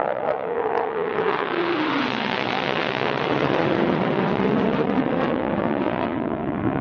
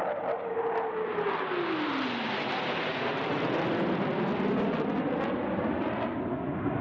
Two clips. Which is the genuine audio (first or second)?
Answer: second